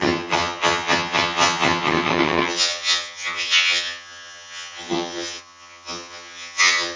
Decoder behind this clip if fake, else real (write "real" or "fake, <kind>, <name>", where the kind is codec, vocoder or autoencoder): fake, vocoder, HiFi-GAN